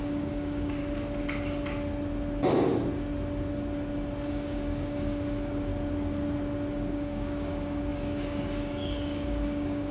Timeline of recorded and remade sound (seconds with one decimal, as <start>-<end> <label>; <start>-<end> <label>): 0.0-0.8 remade; 0.8-4.3 recorded; 4.3-5.7 remade; 5.7-6.7 recorded; 6.7-9.9 remade